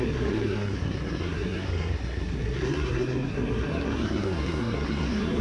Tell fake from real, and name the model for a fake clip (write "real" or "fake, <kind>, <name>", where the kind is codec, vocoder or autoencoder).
fake, codec, SNAC